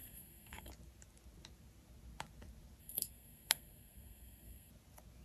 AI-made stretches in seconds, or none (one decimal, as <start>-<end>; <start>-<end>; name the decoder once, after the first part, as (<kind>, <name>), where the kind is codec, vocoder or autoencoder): 0.0-0.7 (codec, SNAC); 2.8-4.7